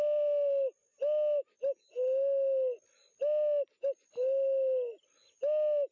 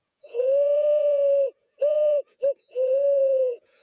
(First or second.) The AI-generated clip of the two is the second